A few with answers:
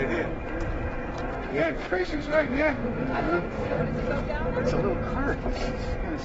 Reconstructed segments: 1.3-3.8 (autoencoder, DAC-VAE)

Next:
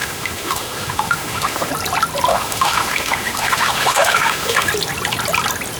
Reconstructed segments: 0.0-1.7 (autoencoder, DAC-VAE); 2.3-4.7

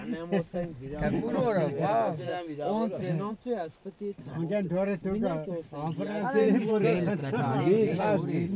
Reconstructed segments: 2.3-3.3 (autoencoder, DAC-VAE)

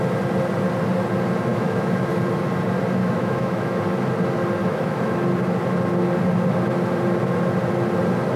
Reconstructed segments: 1.5-2.1 (autoencoder, DAC-VAE); 3.0-3.8; 4.6-5.1

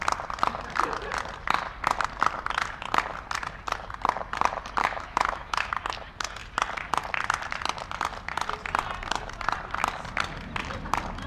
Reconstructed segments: 4.8-5.7 (autoencoder, DAC-VAE)

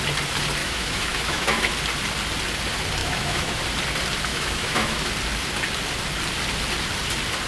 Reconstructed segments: 0.6-1.7 (autoencoder, DAC-VAE); 3.0-3.6; 4.3-5.1